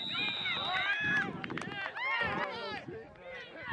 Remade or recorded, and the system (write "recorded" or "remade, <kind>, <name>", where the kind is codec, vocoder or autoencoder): recorded